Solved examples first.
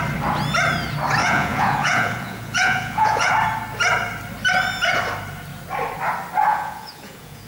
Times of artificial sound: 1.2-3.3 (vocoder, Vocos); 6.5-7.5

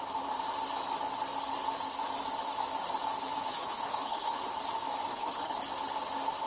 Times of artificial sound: 3.5-4.4 (codec, HILCodec); 5.1-5.7

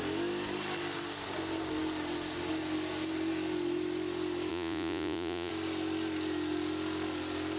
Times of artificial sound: 4.5-5.5 (vocoder, Vocos)